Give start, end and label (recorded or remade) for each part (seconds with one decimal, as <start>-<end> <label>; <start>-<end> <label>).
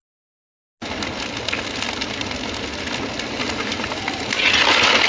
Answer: 0.0-5.1 recorded